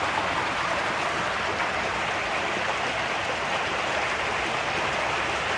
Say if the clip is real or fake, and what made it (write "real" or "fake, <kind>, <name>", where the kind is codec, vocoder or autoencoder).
real